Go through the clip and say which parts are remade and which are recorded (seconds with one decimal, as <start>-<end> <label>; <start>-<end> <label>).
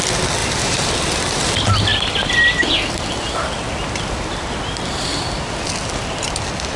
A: 0.0-0.4 recorded; 0.4-1.5 remade; 1.5-6.8 recorded